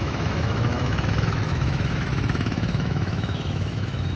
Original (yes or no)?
no